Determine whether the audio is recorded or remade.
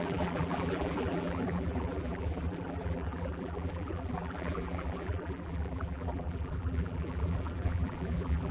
remade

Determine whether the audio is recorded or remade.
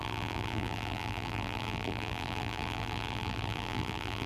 remade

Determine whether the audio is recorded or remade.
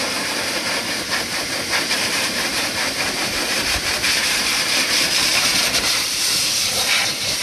remade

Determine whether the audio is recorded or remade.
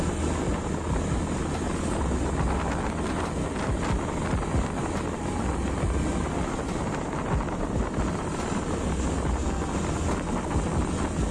recorded